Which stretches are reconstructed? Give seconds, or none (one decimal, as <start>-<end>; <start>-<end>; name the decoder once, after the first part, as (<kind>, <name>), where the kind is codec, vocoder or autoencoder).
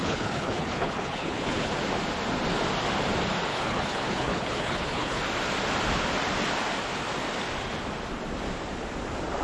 0.0-1.8 (codec, HILCodec); 3.5-5.2